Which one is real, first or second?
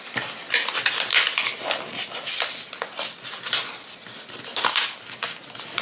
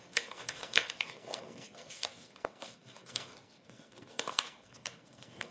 first